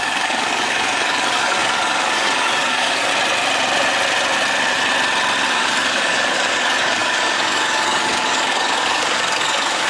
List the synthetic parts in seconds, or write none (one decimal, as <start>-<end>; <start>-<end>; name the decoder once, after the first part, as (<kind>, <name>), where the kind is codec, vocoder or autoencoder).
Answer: 0.0-3.1 (codec, DAC); 5.5-9.9